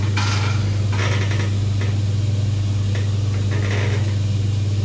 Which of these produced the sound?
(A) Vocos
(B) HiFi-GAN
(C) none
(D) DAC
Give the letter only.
C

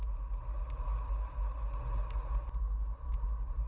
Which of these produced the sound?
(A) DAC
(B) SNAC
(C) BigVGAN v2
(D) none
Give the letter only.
D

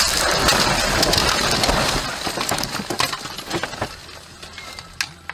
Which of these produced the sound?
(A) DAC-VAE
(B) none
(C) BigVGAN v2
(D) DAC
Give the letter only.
B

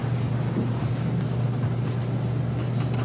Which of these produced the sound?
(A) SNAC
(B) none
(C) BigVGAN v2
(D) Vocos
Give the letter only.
B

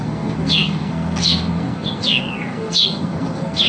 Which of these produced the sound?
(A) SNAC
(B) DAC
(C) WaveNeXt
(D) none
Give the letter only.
A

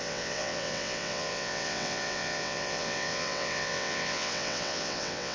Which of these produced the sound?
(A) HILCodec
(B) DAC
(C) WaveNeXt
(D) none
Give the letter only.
C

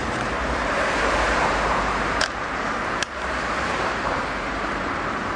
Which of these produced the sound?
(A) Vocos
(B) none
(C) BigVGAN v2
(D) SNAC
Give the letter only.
C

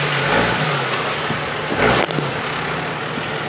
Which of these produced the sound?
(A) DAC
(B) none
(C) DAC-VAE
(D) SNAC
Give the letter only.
B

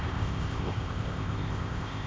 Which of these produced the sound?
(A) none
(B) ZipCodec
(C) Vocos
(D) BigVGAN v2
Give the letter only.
B